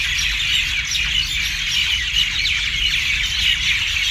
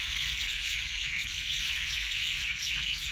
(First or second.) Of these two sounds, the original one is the first